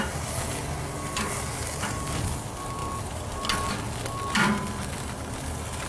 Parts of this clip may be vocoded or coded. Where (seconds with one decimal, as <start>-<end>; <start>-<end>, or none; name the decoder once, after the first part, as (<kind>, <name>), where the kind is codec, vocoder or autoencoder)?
none